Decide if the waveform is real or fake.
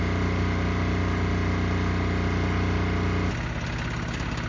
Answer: real